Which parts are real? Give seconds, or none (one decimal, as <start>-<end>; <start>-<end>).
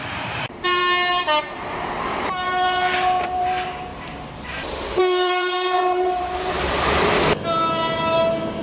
0.8-1.4